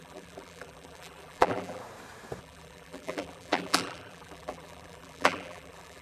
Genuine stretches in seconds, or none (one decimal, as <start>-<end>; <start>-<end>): 1.8-2.4